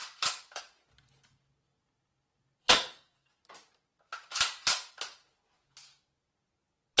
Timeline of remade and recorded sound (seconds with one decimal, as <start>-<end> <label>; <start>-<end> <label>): 0.0-2.6 recorded; 2.6-3.4 remade; 3.4-7.0 recorded

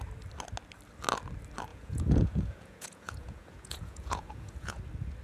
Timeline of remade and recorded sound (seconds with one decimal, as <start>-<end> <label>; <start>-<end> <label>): 0.0-1.7 recorded; 1.7-4.8 remade; 4.8-5.2 recorded

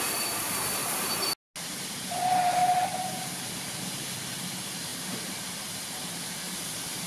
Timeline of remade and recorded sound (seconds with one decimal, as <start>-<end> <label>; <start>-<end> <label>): 0.0-0.8 recorded; 0.8-1.3 remade; 1.3-2.6 recorded; 2.6-3.5 remade; 3.5-4.9 recorded; 4.9-5.4 remade; 5.4-7.1 recorded

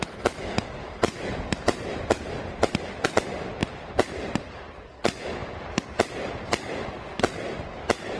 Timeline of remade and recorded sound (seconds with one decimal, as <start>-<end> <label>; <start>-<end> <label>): 0.0-3.6 recorded; 3.6-4.7 remade; 4.7-8.2 recorded

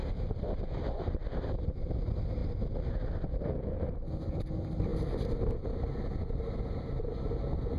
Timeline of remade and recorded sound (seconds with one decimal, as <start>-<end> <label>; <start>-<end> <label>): 0.0-7.8 recorded

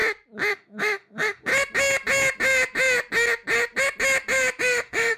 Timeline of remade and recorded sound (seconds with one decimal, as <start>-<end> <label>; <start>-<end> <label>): 0.0-0.5 recorded; 0.5-1.5 remade; 1.5-4.6 recorded; 4.6-5.2 remade

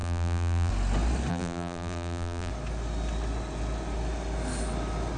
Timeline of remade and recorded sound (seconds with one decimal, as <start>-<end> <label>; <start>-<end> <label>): 0.0-0.7 remade; 0.7-1.3 recorded; 1.3-2.5 remade; 2.5-5.2 recorded